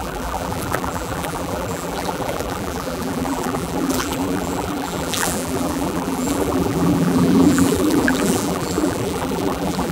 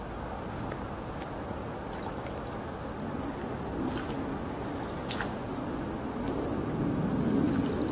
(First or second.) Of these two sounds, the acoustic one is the second